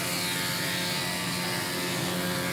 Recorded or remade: recorded